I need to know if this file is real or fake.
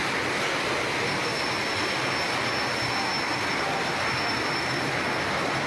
real